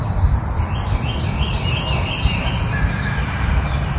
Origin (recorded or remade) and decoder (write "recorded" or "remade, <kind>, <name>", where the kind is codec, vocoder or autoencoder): recorded